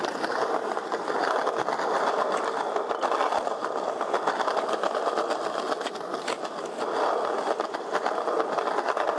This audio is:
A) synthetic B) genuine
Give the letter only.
B